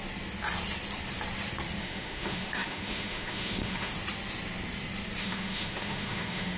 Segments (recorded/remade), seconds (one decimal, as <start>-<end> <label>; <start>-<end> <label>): 0.0-1.8 recorded; 1.8-3.9 remade; 3.9-5.2 recorded; 5.2-6.6 remade